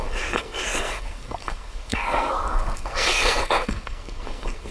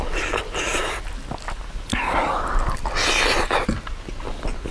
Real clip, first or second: second